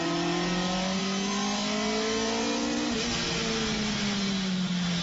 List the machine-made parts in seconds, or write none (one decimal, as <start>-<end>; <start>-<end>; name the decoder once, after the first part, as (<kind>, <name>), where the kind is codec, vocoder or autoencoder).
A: none